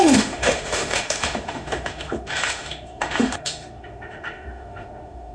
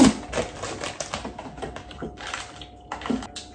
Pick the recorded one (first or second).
second